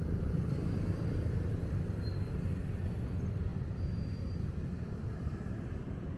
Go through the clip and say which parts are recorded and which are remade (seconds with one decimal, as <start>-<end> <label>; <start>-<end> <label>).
0.0-6.2 recorded